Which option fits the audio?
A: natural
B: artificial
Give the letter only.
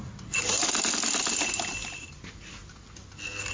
A